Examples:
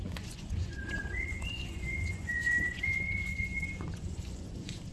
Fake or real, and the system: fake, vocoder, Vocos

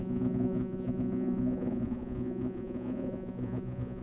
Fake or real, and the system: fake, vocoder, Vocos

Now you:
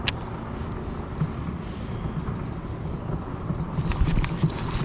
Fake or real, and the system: real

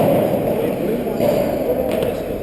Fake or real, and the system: real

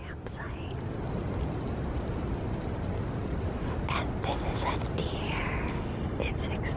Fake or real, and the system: real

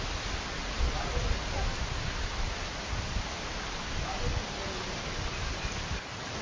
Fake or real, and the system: real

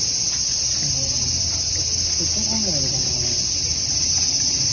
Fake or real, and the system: real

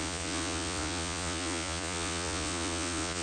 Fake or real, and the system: fake, vocoder, Vocos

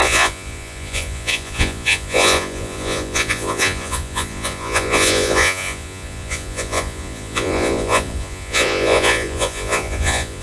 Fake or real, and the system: fake, vocoder, Vocos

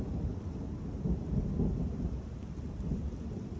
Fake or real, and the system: real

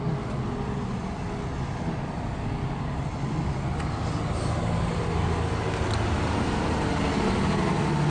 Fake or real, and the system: real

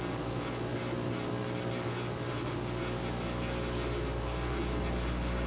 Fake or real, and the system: real